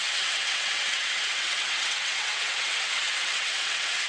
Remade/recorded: remade